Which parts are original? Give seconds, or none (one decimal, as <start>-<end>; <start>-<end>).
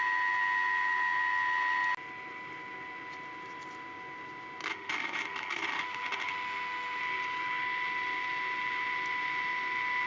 0.0-4.7; 7.0-10.1